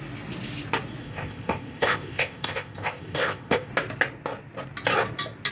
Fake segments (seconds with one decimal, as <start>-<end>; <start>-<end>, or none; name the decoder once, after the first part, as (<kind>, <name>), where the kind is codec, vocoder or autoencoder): 1.0-3.7 (codec, ZipCodec)